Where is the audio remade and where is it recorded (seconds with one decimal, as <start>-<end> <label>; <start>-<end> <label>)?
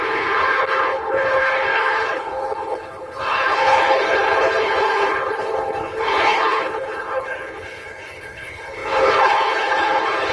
0.0-10.3 remade